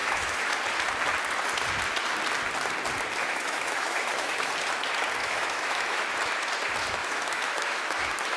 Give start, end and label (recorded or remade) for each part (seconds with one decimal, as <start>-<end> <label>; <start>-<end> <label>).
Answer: 0.0-0.5 remade; 0.5-3.2 recorded; 3.2-4.5 remade; 4.5-5.2 recorded; 5.2-6.0 remade; 6.0-7.0 recorded; 7.0-8.0 remade; 8.0-8.4 recorded